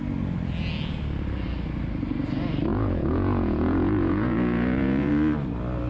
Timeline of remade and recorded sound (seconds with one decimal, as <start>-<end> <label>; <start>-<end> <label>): 0.0-2.7 recorded; 2.7-5.1 remade; 5.1-5.9 recorded